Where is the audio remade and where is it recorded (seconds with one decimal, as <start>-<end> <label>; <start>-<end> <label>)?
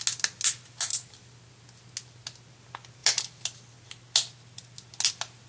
0.0-5.5 recorded